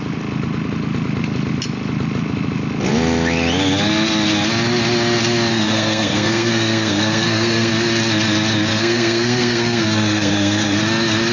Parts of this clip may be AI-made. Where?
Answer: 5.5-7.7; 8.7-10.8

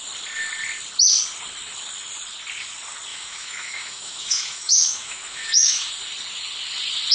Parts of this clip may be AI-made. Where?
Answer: 3.1-5.9